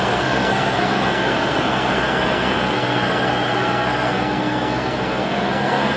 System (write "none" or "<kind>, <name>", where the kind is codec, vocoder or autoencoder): codec, SNAC